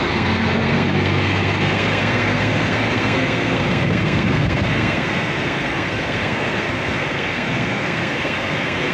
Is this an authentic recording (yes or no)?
no